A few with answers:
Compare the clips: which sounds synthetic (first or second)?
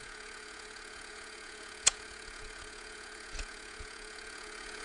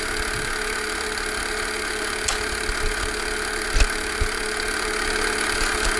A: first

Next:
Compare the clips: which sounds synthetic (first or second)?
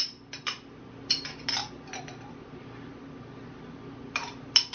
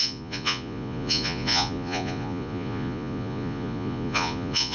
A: second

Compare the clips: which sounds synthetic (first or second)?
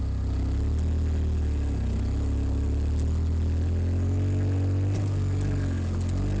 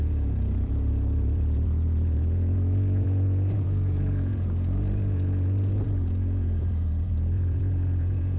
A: second